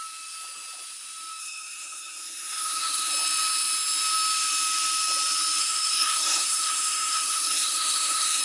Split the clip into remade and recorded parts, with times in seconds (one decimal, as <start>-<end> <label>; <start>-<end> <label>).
0.0-1.4 recorded; 1.4-3.1 remade; 3.1-5.6 recorded; 5.6-8.4 remade